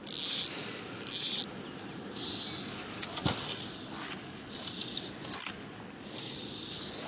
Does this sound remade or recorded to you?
recorded